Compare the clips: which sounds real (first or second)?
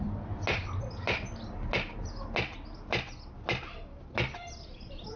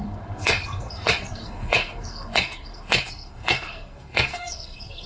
first